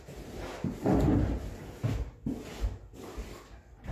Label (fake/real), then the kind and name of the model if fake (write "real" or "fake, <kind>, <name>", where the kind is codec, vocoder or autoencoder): real